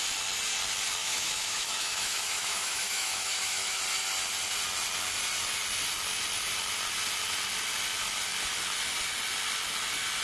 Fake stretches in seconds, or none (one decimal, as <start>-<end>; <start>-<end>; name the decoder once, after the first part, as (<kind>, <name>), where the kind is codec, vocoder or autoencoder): 1.0-3.8 (autoencoder, DAC-VAE)